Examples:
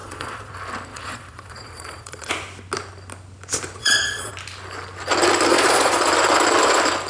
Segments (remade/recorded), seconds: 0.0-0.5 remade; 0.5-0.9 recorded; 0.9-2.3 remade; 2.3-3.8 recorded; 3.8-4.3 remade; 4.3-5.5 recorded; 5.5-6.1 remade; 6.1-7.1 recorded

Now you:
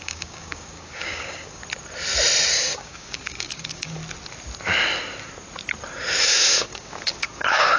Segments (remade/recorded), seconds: 0.0-1.6 remade; 1.6-2.5 recorded; 2.5-4.0 remade; 4.0-6.2 recorded; 6.2-7.8 remade